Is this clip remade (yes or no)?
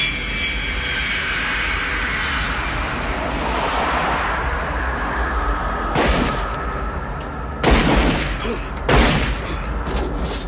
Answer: no